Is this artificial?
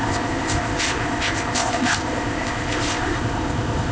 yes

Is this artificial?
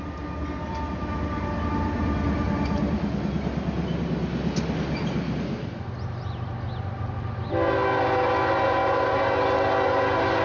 no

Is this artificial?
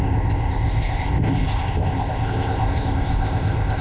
yes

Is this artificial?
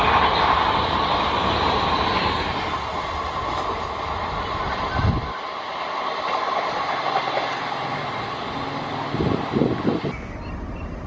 no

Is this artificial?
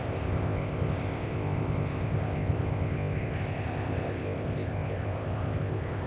yes